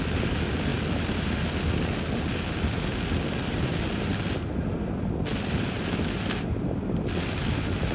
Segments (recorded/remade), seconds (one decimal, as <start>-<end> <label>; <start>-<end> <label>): 0.0-7.9 recorded